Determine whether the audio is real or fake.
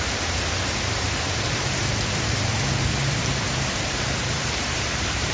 fake